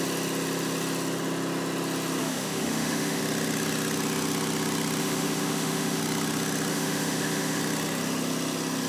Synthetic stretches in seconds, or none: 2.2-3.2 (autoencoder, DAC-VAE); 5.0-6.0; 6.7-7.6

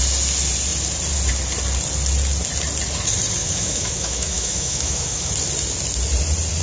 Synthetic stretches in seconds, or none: 3.4-5.3 (autoencoder, DAC-VAE)

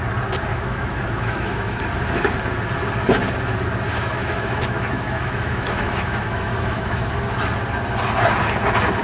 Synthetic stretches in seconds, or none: 0.5-1.8 (autoencoder, DAC-VAE); 3.9-7.1

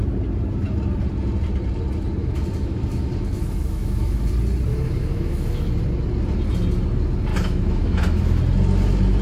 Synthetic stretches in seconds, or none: 2.2-4.3 (autoencoder, DAC-VAE); 4.7-5.7; 7.3-8.4

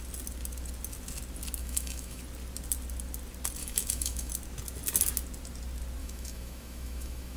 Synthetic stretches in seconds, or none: 1.6-2.2 (autoencoder, DAC-VAE); 3.6-4.3; 6.0-7.4

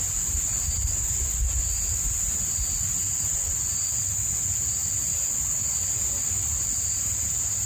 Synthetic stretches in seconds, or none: none

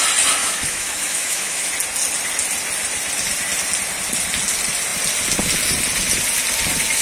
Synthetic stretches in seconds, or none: 0.4-1.7 (autoencoder, DAC-VAE)

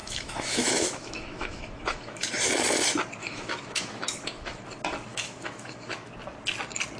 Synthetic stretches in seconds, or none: 0.0-2.3 (autoencoder, DAC-VAE); 3.2-4.6; 5.1-6.1